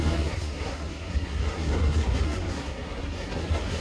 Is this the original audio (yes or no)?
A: no